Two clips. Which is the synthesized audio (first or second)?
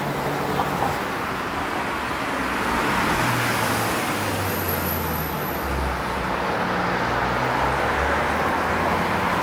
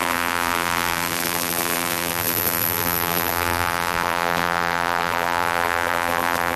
second